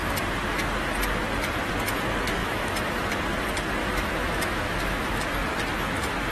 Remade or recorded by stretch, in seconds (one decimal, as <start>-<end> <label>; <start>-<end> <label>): 0.0-2.4 recorded; 2.4-3.0 remade; 3.0-3.8 recorded; 3.8-5.2 remade; 5.2-6.3 recorded